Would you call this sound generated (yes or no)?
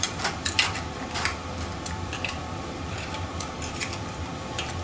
yes